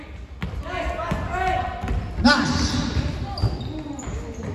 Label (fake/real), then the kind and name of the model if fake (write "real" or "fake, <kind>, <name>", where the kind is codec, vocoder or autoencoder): real